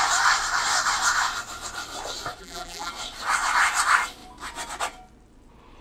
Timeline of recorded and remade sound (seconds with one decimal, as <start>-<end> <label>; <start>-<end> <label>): 0.0-2.4 recorded; 2.4-2.9 remade; 2.9-5.8 recorded